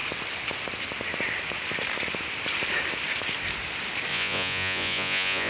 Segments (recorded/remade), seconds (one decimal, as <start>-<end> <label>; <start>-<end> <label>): 0.0-4.1 recorded; 4.1-5.5 remade